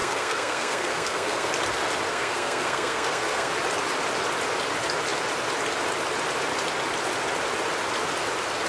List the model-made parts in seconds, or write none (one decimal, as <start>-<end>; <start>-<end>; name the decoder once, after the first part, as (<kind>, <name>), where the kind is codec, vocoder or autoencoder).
0.0-1.5 (codec, SNAC); 2.1-3.5